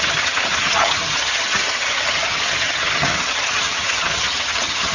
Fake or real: fake